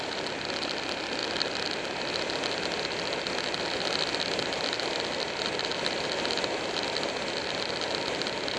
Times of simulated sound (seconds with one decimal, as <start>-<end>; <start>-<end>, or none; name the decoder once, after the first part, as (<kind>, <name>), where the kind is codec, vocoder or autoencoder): none